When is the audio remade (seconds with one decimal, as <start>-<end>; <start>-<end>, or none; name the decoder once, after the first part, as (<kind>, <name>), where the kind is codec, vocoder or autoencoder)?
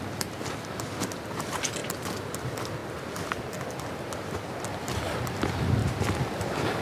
2.8-4.3 (vocoder, BigVGAN v2)